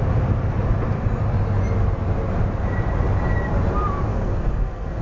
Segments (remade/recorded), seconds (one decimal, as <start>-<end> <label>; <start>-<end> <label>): 0.0-4.1 recorded; 4.1-5.0 remade